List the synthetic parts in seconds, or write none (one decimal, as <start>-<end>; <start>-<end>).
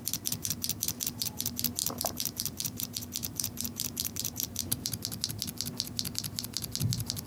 1.8-2.8; 3.2-5.0